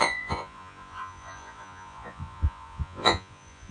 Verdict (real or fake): fake